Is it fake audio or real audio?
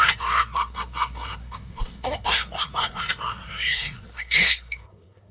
fake